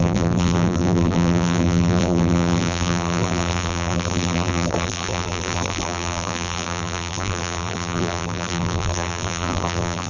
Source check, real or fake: fake